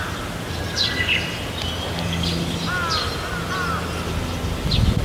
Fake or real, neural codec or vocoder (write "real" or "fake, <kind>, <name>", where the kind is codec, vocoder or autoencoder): real